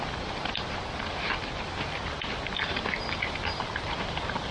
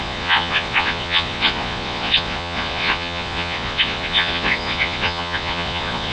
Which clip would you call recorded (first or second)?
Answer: first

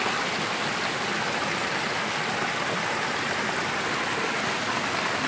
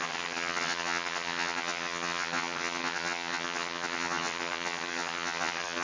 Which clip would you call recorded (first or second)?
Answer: first